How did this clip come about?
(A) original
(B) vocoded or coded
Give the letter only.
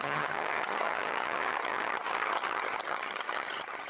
B